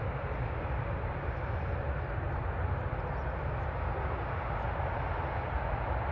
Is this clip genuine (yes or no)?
yes